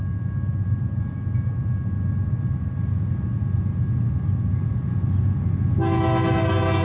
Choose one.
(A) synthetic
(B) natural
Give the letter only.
B